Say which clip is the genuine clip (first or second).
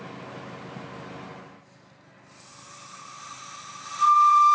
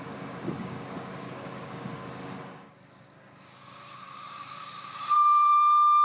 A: first